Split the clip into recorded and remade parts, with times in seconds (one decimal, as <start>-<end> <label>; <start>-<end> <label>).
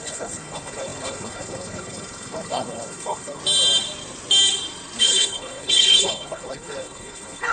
0.0-3.4 remade; 3.4-5.0 recorded; 5.0-7.5 remade